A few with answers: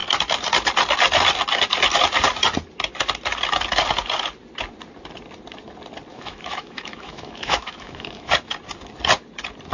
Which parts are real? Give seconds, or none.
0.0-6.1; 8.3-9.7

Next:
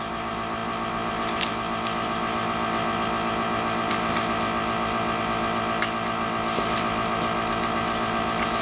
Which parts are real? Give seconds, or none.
0.0-8.6

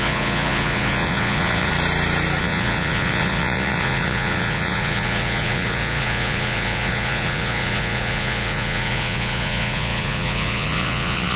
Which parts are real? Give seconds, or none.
1.7-2.4

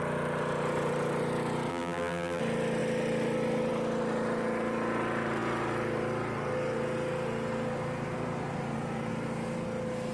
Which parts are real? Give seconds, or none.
0.0-1.7; 2.4-10.1

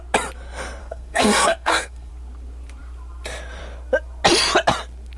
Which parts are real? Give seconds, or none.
0.0-0.8; 2.1-5.2

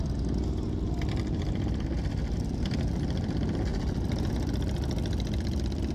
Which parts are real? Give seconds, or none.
0.0-5.9